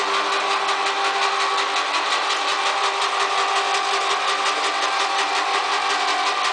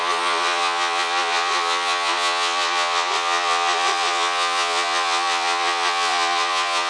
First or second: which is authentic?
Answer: first